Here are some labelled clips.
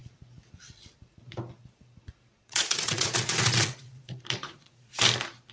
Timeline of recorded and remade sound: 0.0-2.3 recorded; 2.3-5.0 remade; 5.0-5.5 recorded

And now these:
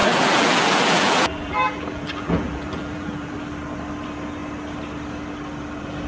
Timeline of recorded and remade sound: 0.0-3.3 remade; 3.3-6.1 recorded

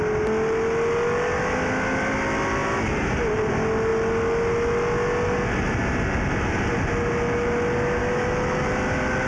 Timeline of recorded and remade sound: 0.0-8.0 recorded; 8.0-8.7 remade; 8.7-9.3 recorded

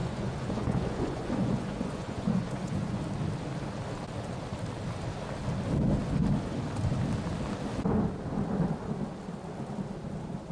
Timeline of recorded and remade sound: 0.0-3.0 remade; 3.0-10.5 recorded